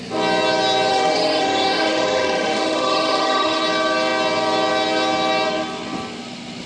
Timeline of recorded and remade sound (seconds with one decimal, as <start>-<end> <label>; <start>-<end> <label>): 0.0-0.9 recorded; 0.9-3.6 remade; 3.6-6.7 recorded